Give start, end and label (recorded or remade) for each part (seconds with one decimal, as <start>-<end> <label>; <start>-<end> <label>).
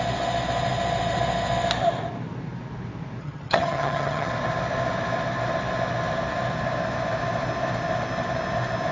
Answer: 0.0-3.2 recorded; 3.2-4.3 remade; 4.3-8.9 recorded